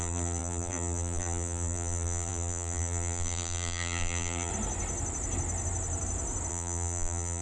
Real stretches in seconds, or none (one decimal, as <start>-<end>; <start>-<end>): 4.5-6.5